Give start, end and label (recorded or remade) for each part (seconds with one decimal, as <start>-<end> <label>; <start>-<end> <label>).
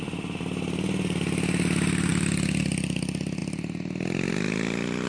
0.0-5.1 recorded